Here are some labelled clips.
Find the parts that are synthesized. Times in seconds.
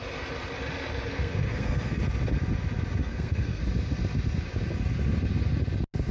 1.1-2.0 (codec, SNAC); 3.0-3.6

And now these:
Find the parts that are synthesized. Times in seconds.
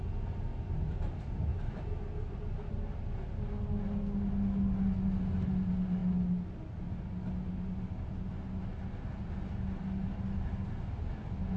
none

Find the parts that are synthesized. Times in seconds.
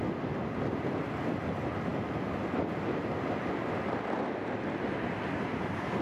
none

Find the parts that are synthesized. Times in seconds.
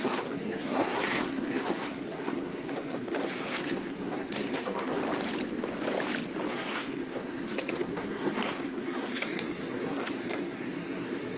0.0-5.0 (codec, SNAC); 6.5-11.4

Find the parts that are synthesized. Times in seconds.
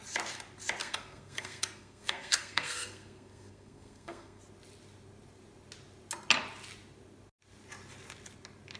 0.8-4.4 (codec, SNAC)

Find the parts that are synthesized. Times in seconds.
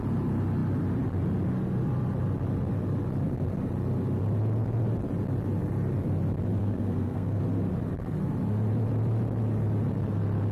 6.6-7.4 (codec, SNAC)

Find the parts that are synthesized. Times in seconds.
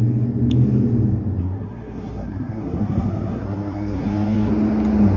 1.4-4.5 (codec, SNAC)